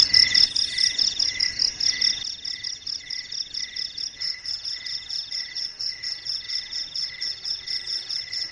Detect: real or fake real